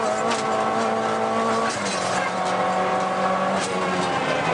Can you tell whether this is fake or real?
real